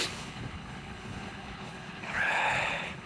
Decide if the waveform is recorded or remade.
remade